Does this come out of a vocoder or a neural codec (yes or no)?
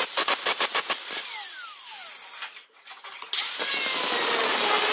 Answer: yes